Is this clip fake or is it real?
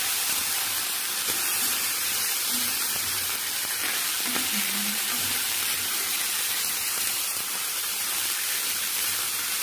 fake